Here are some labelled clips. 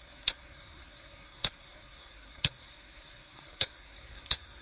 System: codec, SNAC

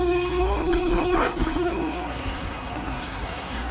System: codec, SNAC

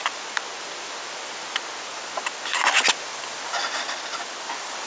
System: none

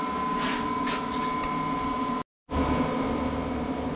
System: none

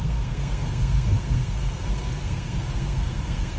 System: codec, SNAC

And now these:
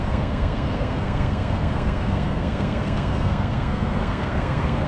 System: codec, SNAC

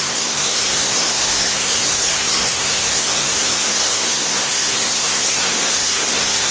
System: codec, SNAC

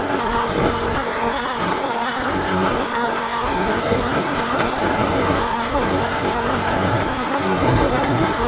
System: codec, SNAC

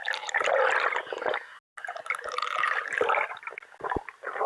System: none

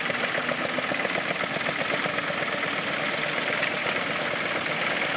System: none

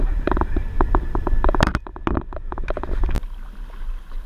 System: none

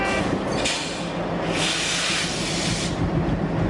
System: none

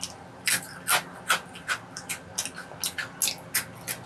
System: none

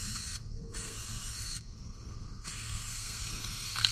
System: codec, SNAC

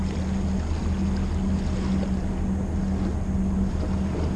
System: none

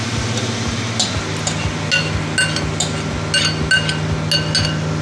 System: none